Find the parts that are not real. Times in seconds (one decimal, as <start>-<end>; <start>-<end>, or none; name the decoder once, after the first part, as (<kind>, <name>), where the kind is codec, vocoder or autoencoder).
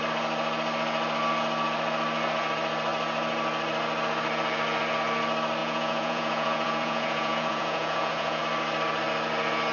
5.6-8.4 (vocoder, Vocos)